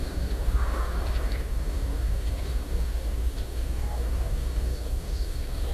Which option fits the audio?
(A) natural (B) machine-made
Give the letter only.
B